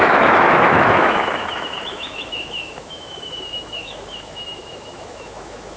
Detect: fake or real fake